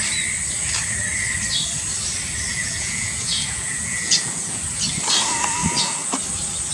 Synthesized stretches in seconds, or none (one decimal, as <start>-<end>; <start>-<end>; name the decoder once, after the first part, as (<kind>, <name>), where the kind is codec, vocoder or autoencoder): 2.5-4.6 (vocoder, Vocos)